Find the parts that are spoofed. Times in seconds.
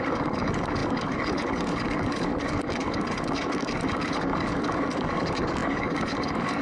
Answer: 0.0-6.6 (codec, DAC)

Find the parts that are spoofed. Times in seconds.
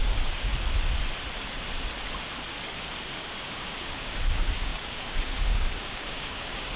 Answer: 0.0-0.5 (codec, DAC); 3.1-6.8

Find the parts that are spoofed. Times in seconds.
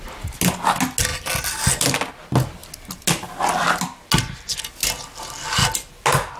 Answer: none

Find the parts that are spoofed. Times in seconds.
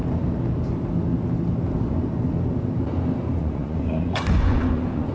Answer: 3.4-5.1 (vocoder, Vocos)